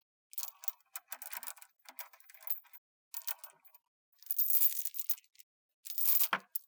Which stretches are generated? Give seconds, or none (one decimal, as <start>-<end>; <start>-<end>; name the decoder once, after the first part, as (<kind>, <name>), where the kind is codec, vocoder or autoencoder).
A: none